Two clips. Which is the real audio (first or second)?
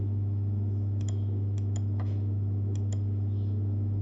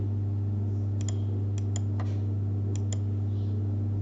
second